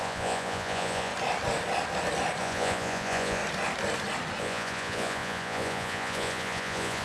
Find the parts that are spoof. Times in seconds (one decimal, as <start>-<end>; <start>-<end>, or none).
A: 0.0-1.1; 2.4-3.4; 4.4-7.0

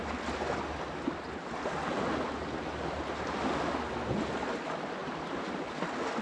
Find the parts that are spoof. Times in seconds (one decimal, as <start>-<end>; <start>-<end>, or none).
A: none

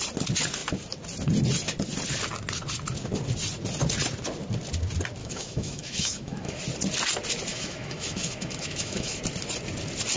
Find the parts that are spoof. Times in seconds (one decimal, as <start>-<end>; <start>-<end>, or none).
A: 5.2-6.6; 7.5-9.2

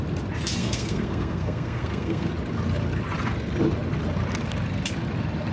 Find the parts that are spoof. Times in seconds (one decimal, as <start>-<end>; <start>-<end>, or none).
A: 0.6-2.3

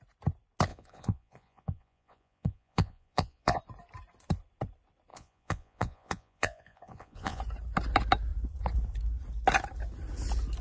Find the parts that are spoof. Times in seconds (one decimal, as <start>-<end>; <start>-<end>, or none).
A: 0.7-3.6; 5.1-7.4

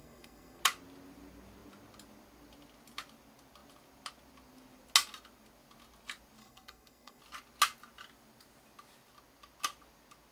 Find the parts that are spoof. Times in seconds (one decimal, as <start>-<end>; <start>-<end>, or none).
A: 0.0-0.6; 6.4-7.2

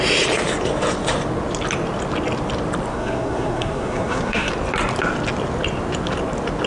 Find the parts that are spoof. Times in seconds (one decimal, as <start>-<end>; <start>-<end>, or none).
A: 2.9-4.5